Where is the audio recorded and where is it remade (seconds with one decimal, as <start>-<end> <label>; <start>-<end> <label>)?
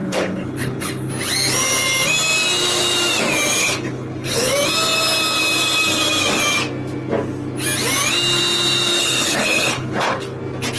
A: 0.0-1.1 remade; 1.1-3.6 recorded; 3.6-4.5 remade; 4.5-9.0 recorded; 9.0-10.4 remade; 10.4-10.8 recorded